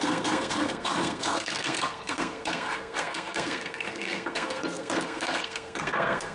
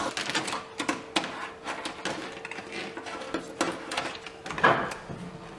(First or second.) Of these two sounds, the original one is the second